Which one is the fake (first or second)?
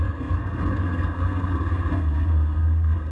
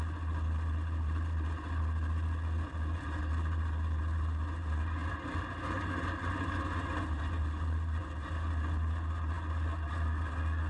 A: first